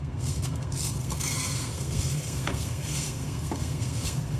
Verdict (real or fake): fake